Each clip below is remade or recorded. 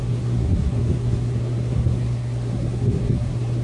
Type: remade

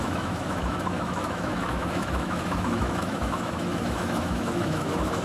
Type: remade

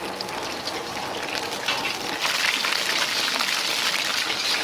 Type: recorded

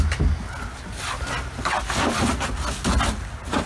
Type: recorded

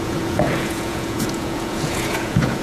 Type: remade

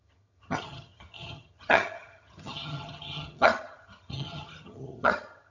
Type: remade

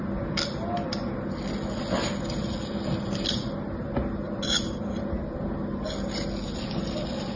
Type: recorded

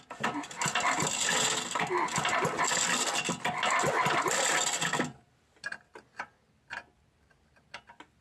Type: recorded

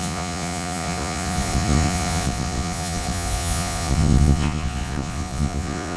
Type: remade